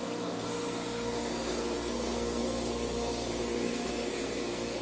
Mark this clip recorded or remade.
remade